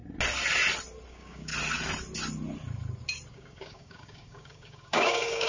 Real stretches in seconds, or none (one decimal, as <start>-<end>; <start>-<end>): 0.0-1.1; 1.5-3.3